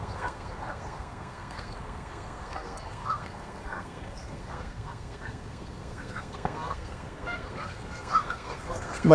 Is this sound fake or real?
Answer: fake